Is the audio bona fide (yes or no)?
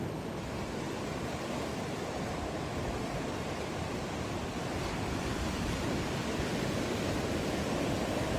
no